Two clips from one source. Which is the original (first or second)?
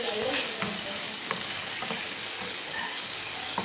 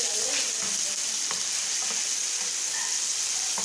second